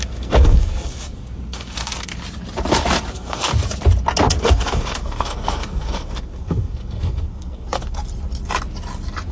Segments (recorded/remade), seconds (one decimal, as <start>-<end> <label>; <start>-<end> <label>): 0.0-2.1 remade; 2.1-3.1 recorded; 3.1-3.5 remade; 3.5-4.4 recorded; 4.4-8.0 remade; 8.0-9.3 recorded

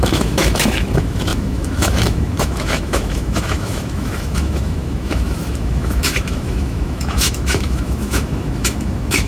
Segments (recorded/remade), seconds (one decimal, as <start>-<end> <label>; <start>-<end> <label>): 0.0-9.3 remade

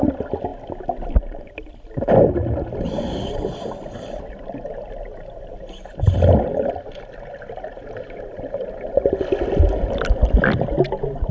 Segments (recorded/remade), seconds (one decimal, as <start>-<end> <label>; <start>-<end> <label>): 0.0-11.3 recorded